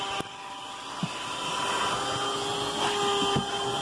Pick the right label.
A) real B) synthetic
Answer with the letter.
A